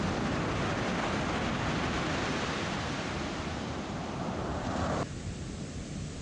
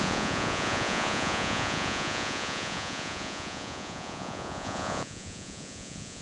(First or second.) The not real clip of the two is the second